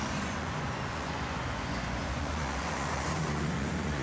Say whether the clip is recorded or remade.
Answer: remade